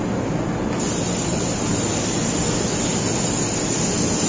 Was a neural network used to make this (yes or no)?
no